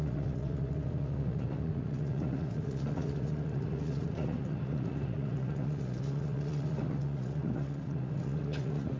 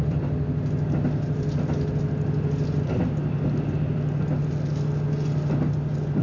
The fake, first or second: first